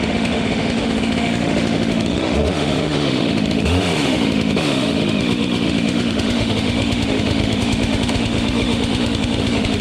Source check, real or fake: fake